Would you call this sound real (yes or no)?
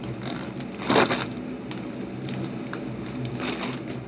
yes